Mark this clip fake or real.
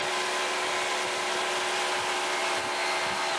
real